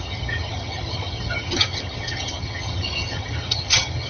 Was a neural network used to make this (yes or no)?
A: yes